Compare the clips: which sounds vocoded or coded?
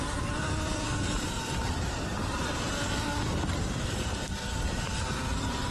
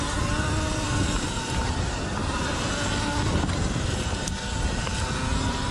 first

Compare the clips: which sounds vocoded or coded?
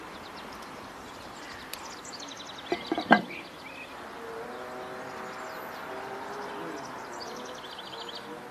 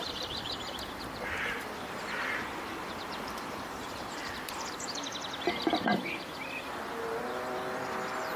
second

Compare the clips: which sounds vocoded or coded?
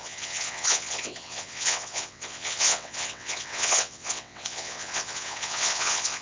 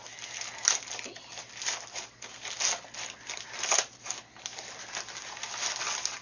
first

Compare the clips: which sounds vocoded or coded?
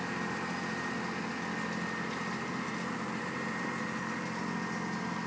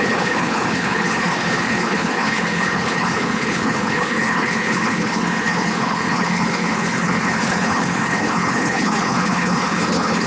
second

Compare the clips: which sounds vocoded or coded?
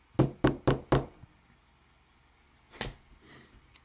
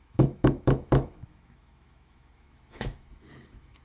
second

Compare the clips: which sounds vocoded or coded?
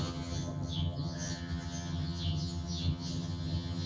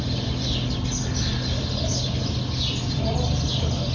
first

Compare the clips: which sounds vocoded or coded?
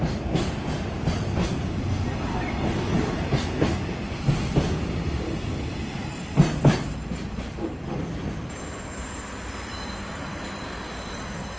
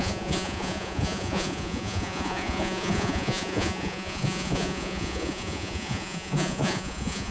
second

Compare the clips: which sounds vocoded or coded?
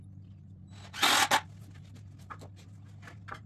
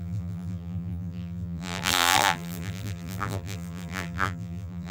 second